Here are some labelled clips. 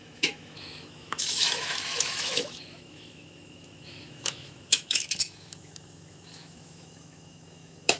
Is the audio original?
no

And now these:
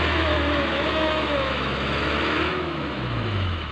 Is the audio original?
no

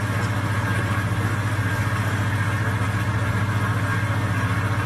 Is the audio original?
yes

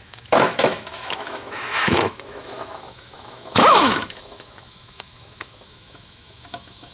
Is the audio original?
no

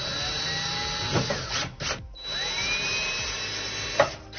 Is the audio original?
yes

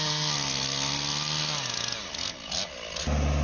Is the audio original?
yes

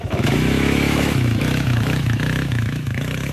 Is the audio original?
no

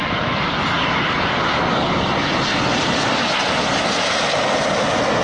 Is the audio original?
yes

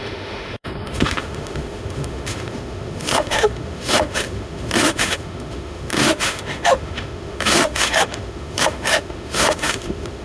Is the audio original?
no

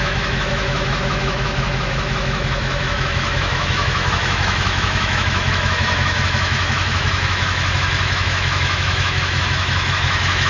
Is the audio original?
no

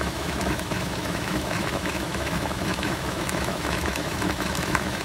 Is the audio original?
no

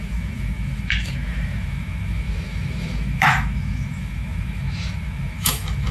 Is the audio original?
no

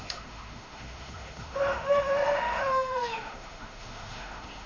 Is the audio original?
no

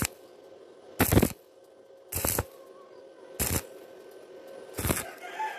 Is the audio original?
yes